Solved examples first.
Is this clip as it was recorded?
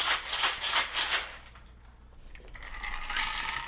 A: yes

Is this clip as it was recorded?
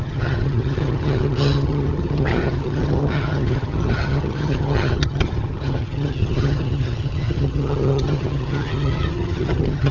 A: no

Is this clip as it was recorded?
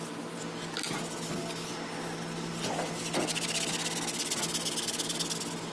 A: yes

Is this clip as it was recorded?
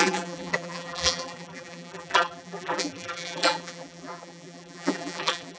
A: no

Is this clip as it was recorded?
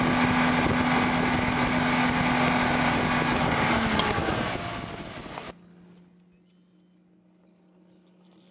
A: yes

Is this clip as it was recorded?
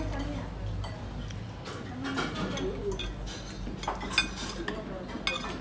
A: yes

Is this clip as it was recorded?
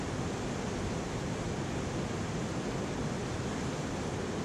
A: yes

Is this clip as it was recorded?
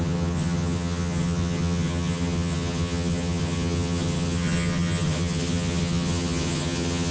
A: no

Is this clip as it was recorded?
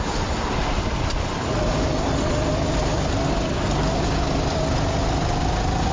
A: yes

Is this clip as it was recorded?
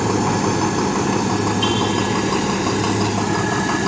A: yes